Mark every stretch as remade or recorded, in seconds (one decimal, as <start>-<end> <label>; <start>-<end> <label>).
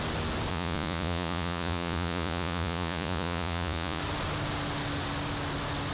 0.0-0.5 recorded; 0.5-4.0 remade; 4.0-5.9 recorded